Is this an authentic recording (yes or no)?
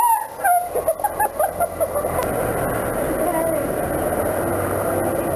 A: yes